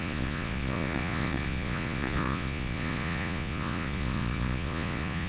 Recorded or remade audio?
remade